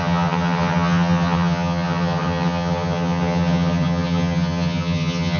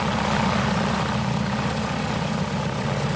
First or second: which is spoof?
first